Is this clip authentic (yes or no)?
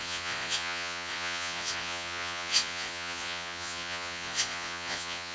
no